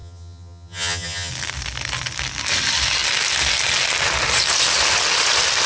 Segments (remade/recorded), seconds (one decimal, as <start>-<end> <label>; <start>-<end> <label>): 0.0-1.3 remade; 1.3-5.7 recorded